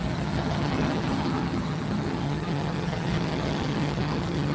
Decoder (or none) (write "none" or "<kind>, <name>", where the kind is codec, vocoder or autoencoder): vocoder, HiFi-GAN